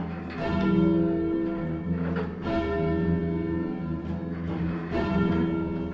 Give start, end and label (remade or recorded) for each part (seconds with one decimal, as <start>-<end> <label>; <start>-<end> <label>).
0.0-5.9 recorded